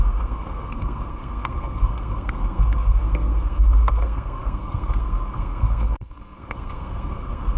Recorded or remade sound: remade